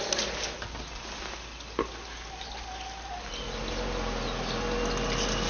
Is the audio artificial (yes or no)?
no